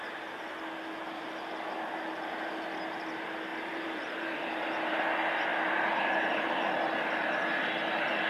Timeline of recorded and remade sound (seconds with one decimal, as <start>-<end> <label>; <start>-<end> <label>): 0.0-3.5 recorded; 3.5-5.0 remade; 5.0-5.5 recorded; 5.5-6.9 remade; 6.9-8.3 recorded